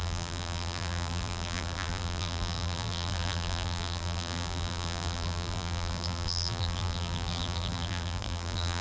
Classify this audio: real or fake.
fake